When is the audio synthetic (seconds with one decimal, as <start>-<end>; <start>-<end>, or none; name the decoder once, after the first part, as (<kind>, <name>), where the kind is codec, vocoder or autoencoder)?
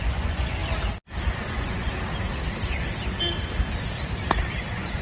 0.0-0.6 (vocoder, Vocos); 1.4-1.9; 4.6-5.0